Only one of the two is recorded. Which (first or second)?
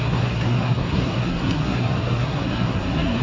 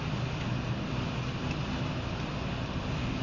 second